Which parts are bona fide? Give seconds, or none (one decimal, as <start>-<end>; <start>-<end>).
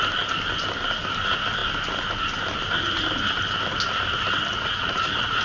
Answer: 0.0-4.5